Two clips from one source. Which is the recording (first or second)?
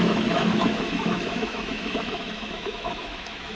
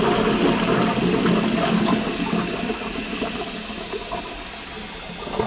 second